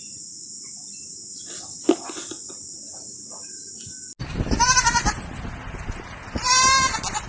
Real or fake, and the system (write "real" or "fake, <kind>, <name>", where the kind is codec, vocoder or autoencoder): real